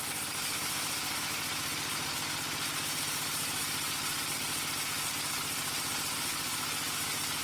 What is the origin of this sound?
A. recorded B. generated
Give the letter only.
A